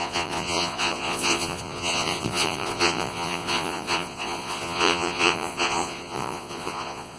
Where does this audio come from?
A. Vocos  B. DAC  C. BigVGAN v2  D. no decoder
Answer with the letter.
A